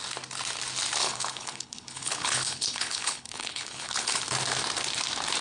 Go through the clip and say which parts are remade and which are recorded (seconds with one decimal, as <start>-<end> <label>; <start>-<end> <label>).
0.0-1.0 recorded; 1.0-4.2 remade; 4.2-5.4 recorded